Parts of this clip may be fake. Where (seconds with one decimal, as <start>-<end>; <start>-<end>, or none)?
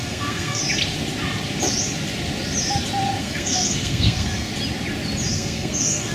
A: 0.0-0.6; 3.2-4.5; 5.3-6.1